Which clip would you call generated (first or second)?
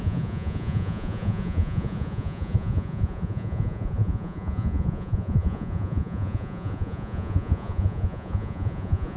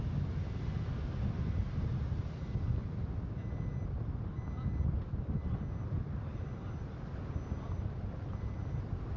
first